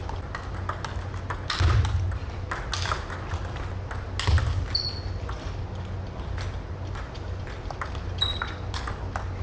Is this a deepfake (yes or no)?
no